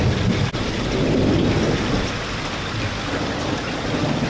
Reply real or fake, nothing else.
real